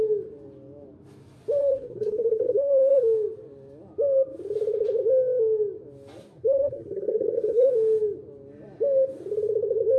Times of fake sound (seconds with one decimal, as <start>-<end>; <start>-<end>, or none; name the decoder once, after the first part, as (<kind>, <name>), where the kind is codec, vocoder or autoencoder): 1.6-3.0 (codec, SNAC); 6.2-7.7